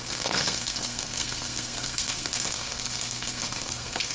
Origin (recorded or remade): remade